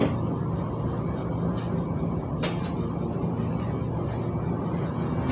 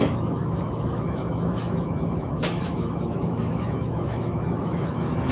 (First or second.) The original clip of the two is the first